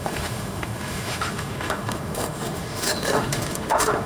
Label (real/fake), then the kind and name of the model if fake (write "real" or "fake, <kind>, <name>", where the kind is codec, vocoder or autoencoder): fake, autoencoder, DAC-VAE